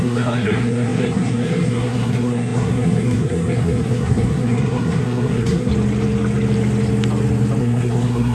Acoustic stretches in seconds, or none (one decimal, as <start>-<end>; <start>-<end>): 5.7-7.6